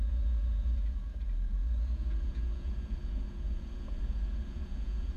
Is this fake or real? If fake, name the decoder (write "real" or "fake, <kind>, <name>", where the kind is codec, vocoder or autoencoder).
fake, vocoder, Vocos